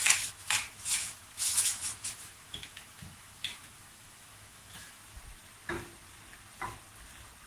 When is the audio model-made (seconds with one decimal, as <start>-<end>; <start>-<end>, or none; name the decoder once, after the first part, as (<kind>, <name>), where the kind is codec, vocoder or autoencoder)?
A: 0.0-5.0 (autoencoder, DAC-VAE)